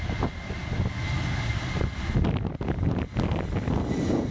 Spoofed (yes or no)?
no